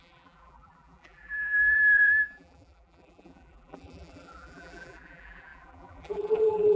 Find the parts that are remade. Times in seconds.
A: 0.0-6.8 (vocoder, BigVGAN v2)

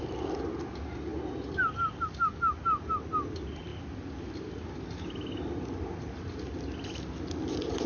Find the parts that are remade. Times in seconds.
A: none

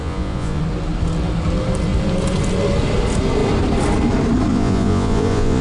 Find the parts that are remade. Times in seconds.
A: 0.0-0.6 (vocoder, Vocos); 4.5-5.6

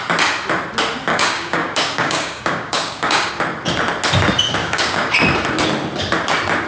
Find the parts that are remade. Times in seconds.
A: 1.1-3.3 (codec, DAC); 4.6-5.1

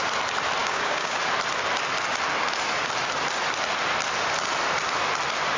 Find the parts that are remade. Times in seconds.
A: 0.6-1.2 (codec, DAC)